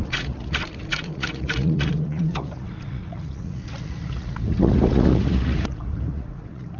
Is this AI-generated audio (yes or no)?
yes